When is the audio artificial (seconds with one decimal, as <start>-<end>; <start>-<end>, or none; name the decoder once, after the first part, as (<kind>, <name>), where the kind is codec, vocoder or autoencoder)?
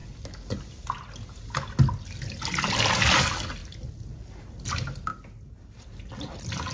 none